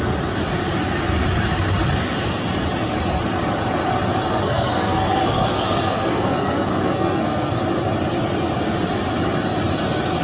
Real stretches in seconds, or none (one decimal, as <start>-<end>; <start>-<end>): 0.0-4.3; 7.6-10.2

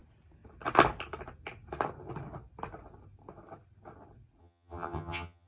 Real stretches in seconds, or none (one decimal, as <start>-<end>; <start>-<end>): 0.0-4.4

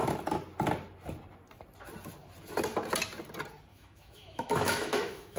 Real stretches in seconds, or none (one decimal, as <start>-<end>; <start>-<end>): 0.0-3.7

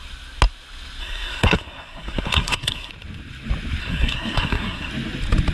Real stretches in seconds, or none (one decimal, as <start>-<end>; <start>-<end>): 0.0-1.0; 2.9-3.8; 4.9-5.5

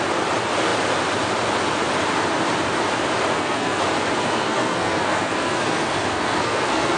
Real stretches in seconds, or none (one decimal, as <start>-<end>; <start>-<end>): 0.0-3.3; 3.8-4.2

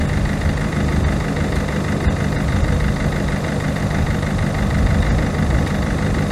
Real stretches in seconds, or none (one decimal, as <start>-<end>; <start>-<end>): 0.0-6.3

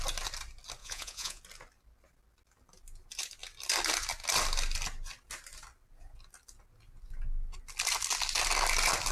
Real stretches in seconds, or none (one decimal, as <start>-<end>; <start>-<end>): 0.0-0.8; 1.4-9.1

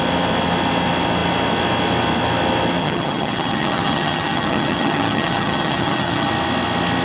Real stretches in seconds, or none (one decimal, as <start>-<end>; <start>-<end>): 0.0-2.8; 6.3-7.0